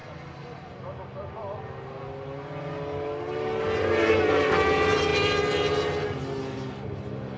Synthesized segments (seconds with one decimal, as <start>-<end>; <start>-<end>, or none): none